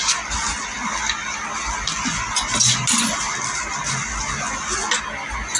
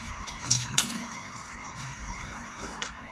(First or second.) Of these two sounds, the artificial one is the second